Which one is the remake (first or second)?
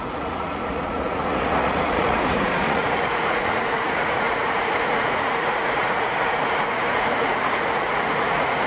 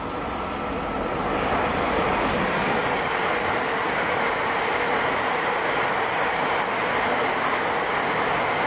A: first